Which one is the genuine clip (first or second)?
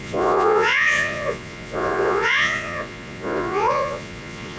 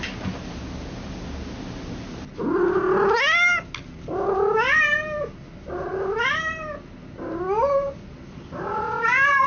second